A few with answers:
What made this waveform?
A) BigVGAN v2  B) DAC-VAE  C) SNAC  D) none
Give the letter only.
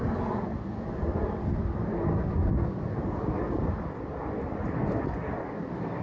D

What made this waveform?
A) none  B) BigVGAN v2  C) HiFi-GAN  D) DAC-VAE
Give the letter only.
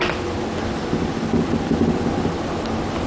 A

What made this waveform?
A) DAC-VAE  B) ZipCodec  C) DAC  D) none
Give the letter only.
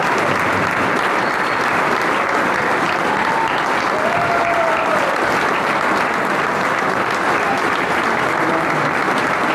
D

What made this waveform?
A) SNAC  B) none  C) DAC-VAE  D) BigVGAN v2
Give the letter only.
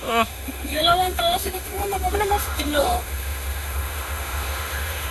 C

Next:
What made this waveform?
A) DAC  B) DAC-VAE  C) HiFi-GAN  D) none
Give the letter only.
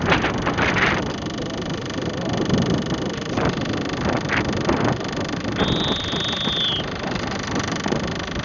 D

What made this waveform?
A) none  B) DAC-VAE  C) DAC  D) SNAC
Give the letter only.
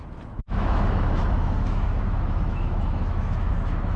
B